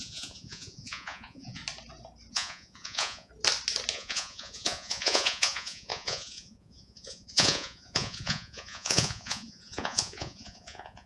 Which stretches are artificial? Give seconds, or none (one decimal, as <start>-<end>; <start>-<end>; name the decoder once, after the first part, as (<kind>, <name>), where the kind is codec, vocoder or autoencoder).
0.0-1.6 (vocoder, Vocos); 2.3-3.3; 3.9-11.1